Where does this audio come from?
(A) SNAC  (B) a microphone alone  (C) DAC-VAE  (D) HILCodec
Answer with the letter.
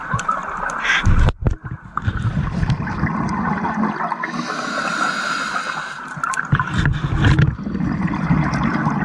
B